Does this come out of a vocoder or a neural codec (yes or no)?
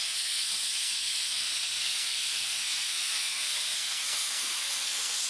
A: yes